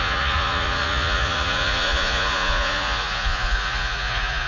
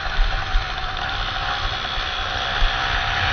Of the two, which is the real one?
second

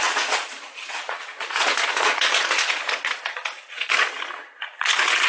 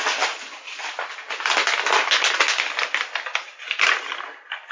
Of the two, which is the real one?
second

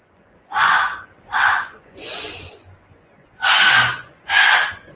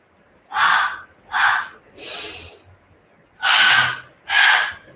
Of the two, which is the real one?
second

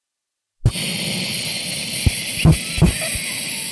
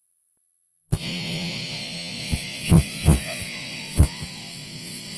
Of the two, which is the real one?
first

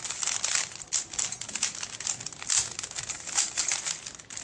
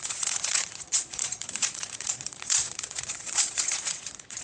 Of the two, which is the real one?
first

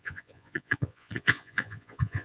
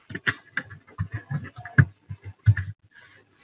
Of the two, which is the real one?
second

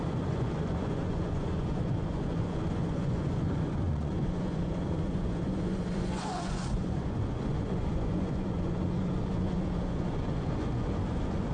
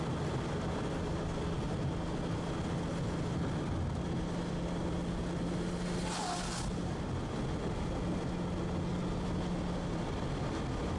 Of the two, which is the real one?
second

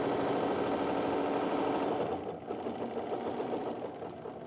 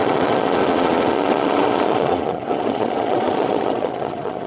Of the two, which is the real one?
first